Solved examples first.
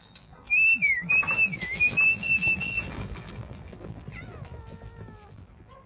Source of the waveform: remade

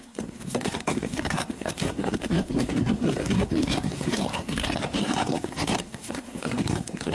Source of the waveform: remade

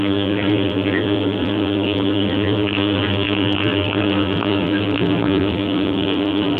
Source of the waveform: remade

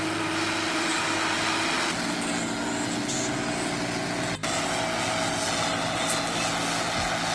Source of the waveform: recorded